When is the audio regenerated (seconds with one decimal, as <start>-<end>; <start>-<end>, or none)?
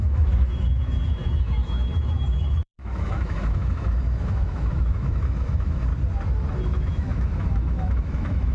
0.0-5.9; 6.5-8.5